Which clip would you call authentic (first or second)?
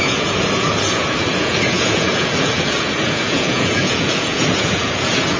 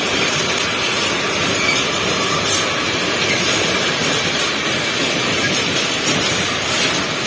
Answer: second